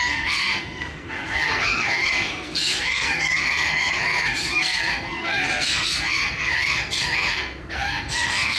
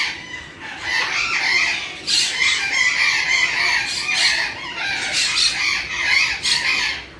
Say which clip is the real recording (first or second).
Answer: second